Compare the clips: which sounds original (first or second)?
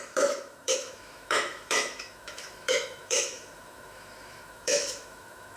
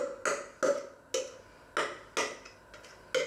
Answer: second